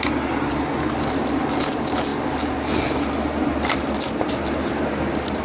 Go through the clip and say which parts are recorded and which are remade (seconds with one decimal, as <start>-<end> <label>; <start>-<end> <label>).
0.0-5.4 recorded